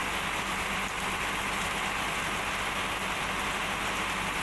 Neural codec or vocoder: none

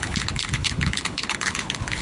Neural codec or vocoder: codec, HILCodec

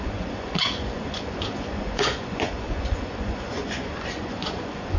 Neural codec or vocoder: vocoder, Vocos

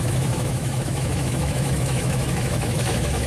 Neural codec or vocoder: autoencoder, DAC-VAE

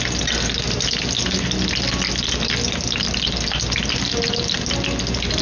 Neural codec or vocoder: none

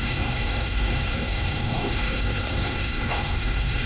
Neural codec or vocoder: codec, SNAC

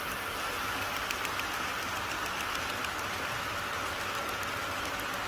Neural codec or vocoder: none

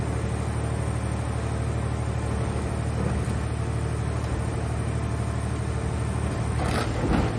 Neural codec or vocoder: none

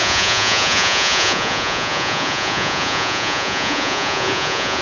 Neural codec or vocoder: vocoder, Vocos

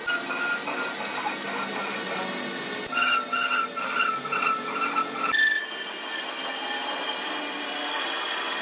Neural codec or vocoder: none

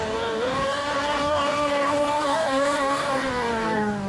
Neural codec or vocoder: codec, DAC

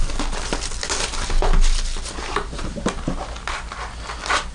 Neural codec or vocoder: none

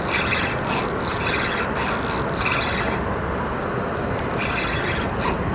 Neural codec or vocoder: none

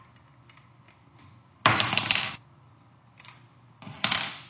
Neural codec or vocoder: none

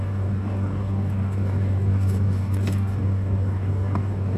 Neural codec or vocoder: codec, DAC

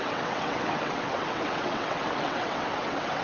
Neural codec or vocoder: vocoder, WaveNeXt